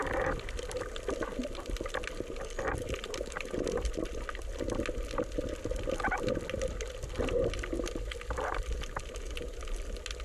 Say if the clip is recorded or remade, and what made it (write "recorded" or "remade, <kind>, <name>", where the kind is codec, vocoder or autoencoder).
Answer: recorded